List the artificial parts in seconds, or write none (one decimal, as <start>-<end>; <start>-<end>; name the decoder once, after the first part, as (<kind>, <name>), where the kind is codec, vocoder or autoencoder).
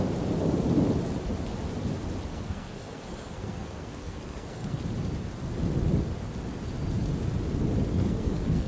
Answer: 2.3-4.8 (codec, SNAC); 7.9-8.7